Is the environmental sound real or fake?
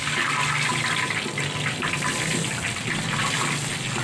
real